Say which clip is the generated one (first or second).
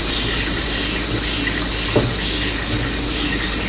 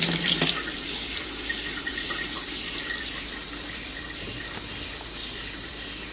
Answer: second